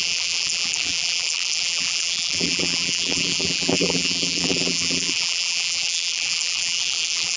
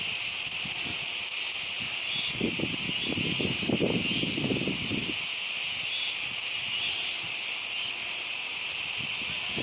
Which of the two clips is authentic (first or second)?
second